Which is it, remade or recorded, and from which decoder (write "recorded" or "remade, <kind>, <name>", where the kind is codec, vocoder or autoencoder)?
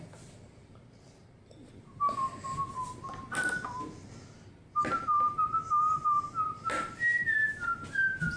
recorded